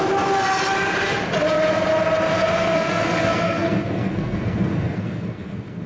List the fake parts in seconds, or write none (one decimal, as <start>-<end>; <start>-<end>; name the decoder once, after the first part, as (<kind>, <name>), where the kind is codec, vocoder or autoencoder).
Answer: 2.4-5.9 (codec, SNAC)

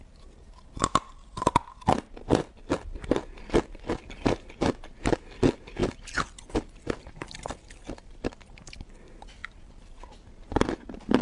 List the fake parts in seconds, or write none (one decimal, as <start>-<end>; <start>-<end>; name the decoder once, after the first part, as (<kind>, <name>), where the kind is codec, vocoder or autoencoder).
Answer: 0.0-11.2 (vocoder, BigVGAN v2)

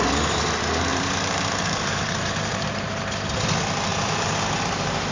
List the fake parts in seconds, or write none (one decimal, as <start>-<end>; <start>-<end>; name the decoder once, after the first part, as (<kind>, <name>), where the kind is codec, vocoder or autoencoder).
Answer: 0.9-3.0 (vocoder, BigVGAN v2); 3.9-4.6